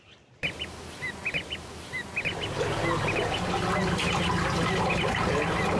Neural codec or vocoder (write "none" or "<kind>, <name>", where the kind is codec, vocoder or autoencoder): none